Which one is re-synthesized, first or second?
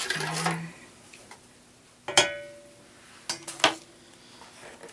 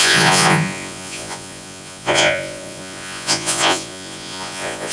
second